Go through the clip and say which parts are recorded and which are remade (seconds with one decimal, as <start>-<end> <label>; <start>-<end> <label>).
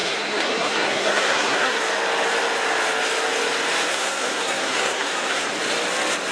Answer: 0.0-1.8 remade; 1.8-3.9 recorded; 3.9-5.5 remade; 5.5-6.3 recorded